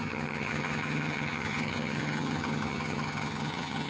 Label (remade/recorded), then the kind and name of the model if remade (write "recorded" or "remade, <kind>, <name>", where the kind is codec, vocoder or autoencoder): remade, vocoder, HiFi-GAN